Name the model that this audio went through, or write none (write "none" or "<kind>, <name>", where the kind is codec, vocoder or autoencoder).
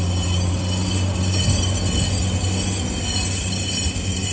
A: none